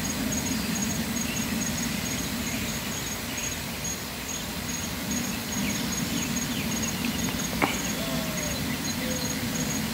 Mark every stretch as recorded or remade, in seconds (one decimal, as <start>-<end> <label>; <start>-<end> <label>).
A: 0.0-0.8 recorded; 0.8-3.0 remade; 3.0-9.9 recorded